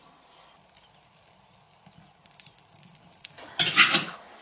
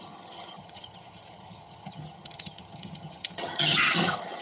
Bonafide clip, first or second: first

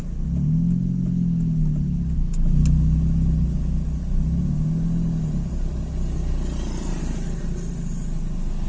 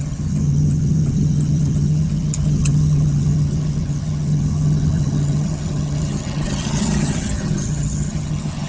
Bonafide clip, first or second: first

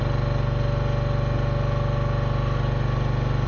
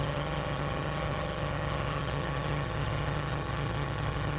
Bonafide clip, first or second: first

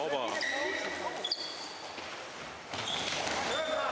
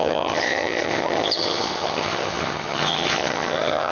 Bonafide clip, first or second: first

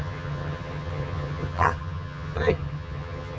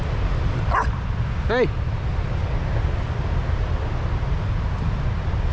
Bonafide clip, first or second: second